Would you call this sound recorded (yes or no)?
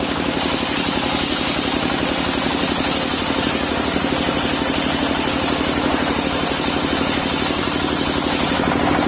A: yes